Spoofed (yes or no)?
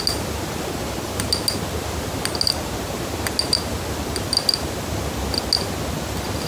no